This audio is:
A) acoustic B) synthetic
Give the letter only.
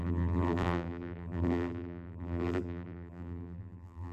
B